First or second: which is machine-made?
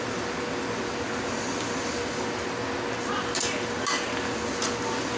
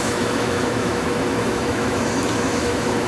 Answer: second